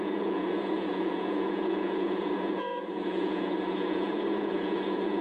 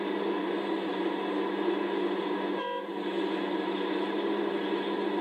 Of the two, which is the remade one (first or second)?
first